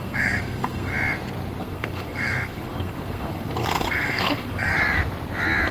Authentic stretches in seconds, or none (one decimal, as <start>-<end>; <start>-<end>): 0.9-1.6; 4.7-5.7